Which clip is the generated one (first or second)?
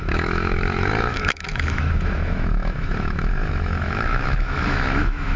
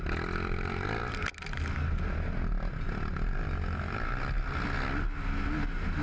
first